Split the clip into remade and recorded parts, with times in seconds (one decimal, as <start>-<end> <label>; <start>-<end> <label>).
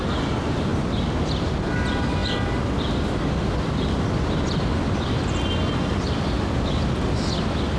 0.0-7.8 recorded